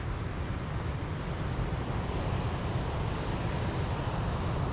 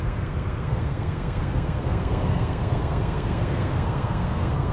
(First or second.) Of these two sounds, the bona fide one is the first